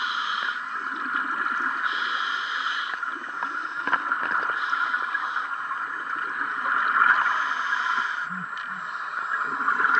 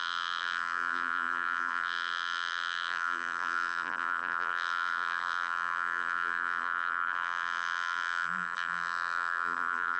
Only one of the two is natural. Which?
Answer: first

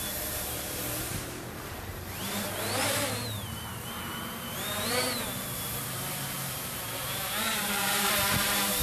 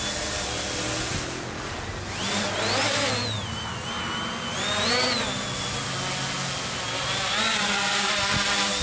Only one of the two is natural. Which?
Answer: second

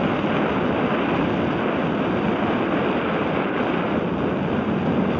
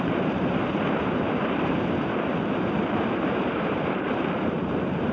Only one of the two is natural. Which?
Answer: first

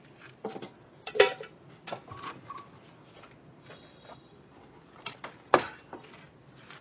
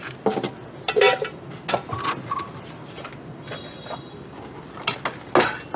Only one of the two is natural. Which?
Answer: second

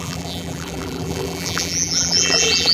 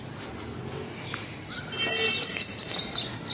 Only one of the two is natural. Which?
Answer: second